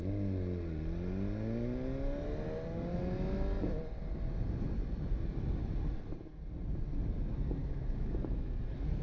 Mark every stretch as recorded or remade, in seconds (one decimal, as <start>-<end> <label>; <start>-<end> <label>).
0.0-7.6 recorded; 7.6-8.5 remade; 8.5-9.0 recorded